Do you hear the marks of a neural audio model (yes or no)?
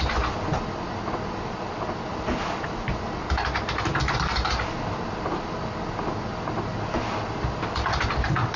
no